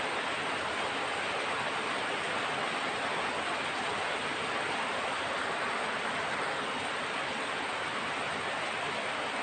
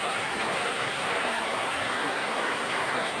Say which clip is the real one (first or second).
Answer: first